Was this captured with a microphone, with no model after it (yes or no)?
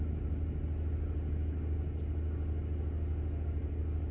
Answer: yes